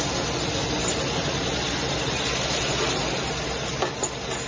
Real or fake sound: real